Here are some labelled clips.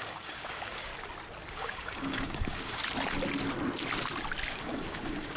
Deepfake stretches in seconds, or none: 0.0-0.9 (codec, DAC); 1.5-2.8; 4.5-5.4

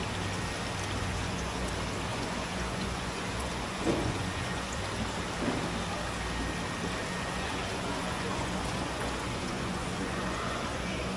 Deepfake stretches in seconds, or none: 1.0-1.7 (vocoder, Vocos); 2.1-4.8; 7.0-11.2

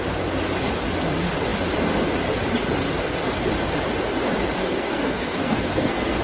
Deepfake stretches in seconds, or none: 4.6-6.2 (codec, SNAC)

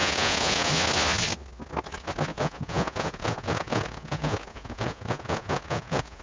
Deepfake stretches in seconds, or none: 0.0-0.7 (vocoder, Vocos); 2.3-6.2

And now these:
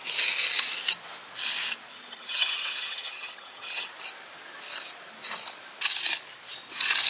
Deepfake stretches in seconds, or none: 1.9-3.9 (vocoder, HiFi-GAN)